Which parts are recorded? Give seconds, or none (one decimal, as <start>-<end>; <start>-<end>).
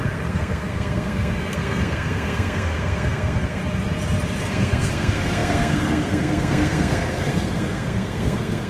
3.6-4.4